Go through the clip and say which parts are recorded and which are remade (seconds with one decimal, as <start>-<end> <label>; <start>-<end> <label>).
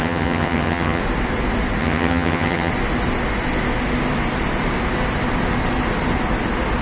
0.0-1.0 remade; 1.0-1.8 recorded; 1.8-2.7 remade; 2.7-6.8 recorded